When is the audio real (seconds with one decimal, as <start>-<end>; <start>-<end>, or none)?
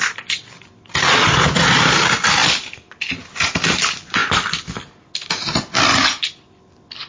0.0-4.2; 4.8-7.1